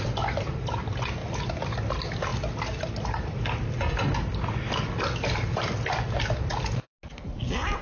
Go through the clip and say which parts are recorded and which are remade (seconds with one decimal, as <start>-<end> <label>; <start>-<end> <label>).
0.0-7.8 recorded